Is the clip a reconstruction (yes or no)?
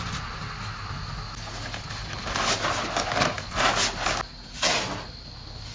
no